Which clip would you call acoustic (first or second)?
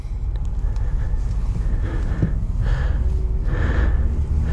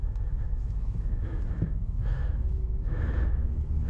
first